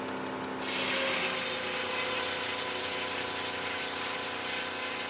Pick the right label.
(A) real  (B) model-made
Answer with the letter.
A